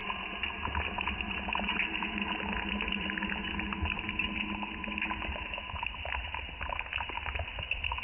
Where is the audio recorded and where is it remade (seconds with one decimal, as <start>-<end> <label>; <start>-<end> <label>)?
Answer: 0.0-8.0 recorded